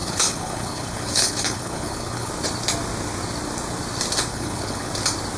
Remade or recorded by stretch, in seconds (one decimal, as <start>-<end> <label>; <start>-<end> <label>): 0.0-2.3 remade; 2.3-4.3 recorded; 4.3-4.9 remade; 4.9-5.4 recorded